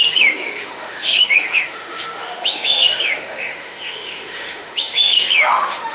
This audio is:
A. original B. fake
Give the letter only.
B